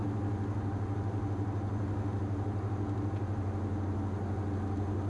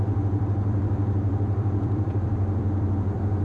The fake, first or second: second